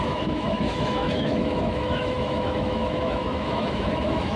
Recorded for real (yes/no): no